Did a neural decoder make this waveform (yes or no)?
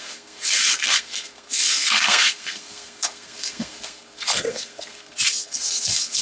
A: yes